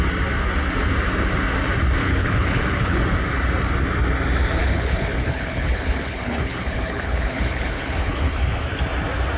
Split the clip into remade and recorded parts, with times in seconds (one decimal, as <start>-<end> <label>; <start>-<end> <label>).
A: 0.0-2.0 recorded; 2.0-3.0 remade; 3.0-4.6 recorded; 4.6-8.4 remade; 8.4-9.4 recorded